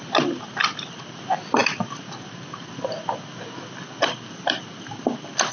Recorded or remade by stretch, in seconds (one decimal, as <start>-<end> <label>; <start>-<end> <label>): 0.0-5.5 recorded